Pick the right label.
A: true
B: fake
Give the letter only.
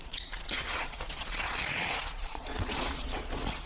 B